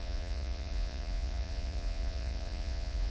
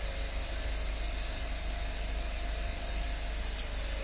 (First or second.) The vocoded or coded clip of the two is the first